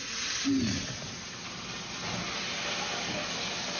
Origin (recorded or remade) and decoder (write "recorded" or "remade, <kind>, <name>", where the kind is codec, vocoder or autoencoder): recorded